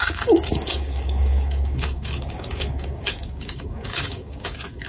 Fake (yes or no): yes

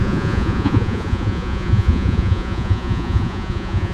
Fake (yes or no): yes